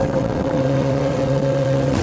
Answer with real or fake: fake